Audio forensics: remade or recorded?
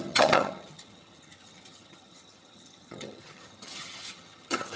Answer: remade